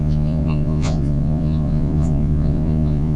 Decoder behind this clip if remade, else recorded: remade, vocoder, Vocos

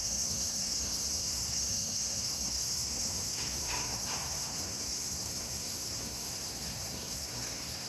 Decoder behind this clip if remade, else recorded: remade, codec, SNAC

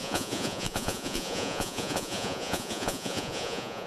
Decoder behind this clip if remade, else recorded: remade, vocoder, Vocos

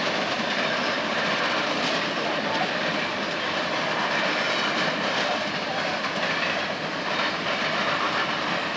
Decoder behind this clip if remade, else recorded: remade, vocoder, BigVGAN v2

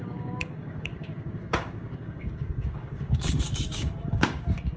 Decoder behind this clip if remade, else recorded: remade, codec, DAC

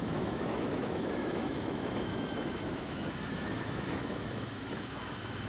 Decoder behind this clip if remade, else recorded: remade, autoencoder, DAC-VAE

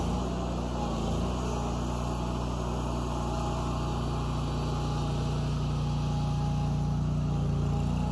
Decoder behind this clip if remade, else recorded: recorded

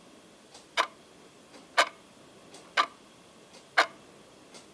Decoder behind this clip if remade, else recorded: recorded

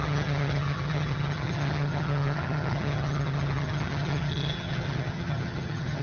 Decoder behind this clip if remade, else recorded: remade, vocoder, HiFi-GAN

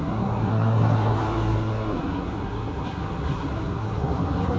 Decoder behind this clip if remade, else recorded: remade, codec, SNAC